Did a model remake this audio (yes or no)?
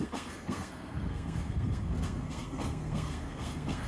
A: yes